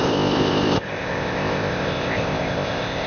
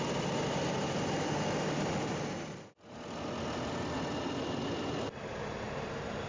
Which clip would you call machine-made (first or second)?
first